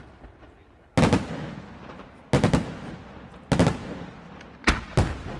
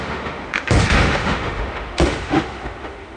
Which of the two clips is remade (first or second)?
second